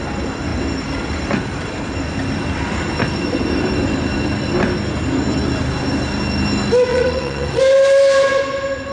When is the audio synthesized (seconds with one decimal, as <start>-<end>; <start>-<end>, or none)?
6.9-7.6